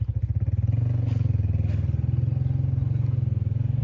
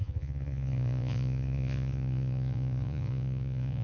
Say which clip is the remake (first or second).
second